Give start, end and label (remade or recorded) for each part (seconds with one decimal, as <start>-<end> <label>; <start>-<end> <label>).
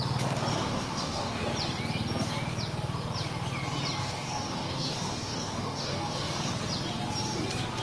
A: 0.0-0.5 recorded; 0.5-1.4 remade; 1.4-4.0 recorded; 4.0-6.5 remade; 6.5-7.8 recorded